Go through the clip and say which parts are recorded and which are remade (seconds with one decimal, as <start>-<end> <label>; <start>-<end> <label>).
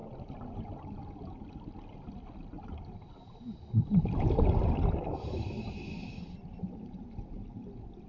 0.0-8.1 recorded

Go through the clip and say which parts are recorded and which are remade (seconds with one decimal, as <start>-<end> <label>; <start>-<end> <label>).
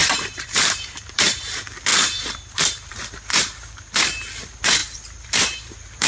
0.0-1.4 remade; 1.4-1.9 recorded; 1.9-2.9 remade; 2.9-4.8 recorded; 4.8-6.1 remade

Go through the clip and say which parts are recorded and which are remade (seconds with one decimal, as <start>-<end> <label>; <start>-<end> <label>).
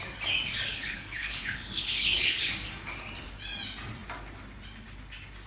0.0-0.7 recorded; 0.7-2.5 remade; 2.5-5.5 recorded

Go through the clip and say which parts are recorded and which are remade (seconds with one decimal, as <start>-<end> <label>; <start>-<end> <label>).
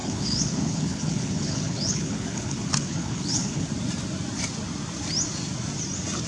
0.0-3.7 remade; 3.7-6.3 recorded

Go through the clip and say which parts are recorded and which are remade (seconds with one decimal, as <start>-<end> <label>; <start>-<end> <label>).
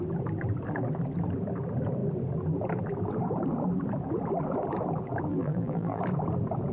0.0-5.3 recorded; 5.3-6.0 remade; 6.0-6.7 recorded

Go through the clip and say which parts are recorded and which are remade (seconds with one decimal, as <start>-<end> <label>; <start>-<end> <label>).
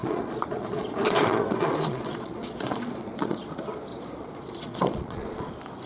0.0-3.5 remade; 3.5-3.9 recorded; 3.9-5.5 remade; 5.5-5.9 recorded